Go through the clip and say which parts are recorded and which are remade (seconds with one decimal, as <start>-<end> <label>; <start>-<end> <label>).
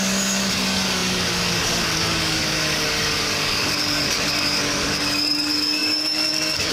0.0-6.7 remade